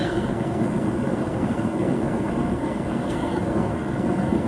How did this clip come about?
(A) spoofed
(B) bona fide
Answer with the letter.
A